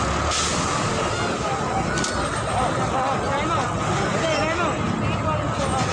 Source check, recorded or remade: recorded